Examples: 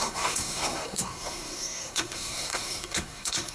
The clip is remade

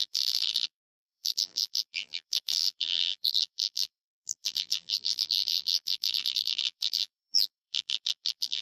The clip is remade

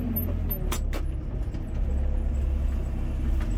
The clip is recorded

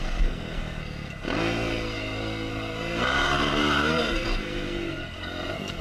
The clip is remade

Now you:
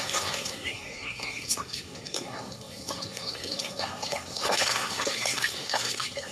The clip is remade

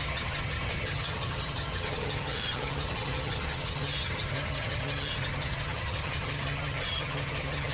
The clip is remade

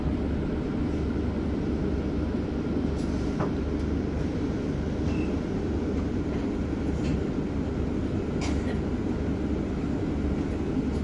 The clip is recorded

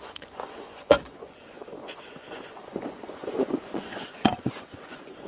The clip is remade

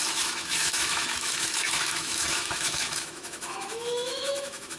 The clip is remade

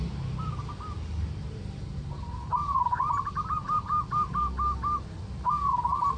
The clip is recorded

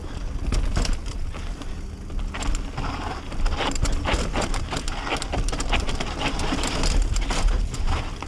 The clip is recorded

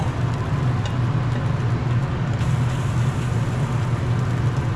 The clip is recorded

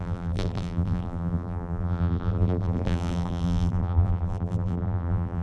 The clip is remade